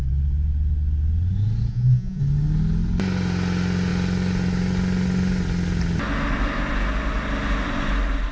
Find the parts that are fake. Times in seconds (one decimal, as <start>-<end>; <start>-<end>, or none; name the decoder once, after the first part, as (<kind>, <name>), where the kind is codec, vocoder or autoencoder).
1.7-2.2 (vocoder, Vocos)